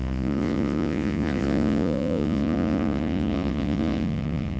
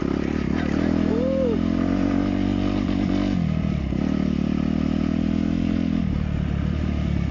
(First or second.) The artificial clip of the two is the first